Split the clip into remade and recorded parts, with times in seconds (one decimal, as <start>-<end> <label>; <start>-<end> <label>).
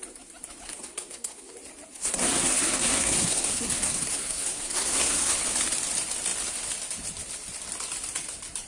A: 0.0-0.7 recorded; 0.7-1.5 remade; 1.5-1.9 recorded; 1.9-5.4 remade; 5.4-8.7 recorded